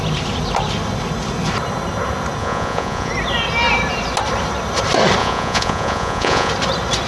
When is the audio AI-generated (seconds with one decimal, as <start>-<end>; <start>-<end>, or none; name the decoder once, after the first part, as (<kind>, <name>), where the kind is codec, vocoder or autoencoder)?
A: 2.4-3.1 (vocoder, Vocos); 5.2-6.5